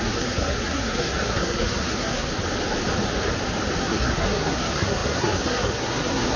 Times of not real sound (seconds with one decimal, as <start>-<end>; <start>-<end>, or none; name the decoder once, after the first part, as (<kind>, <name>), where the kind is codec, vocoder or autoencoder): 0.0-2.3 (codec, SNAC); 3.8-6.4